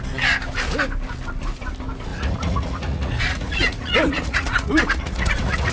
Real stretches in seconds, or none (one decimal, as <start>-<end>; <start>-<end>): 0.0-2.1